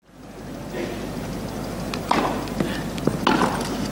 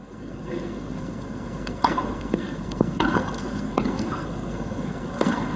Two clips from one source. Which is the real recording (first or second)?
first